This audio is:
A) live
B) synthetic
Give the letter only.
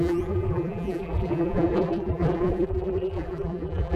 B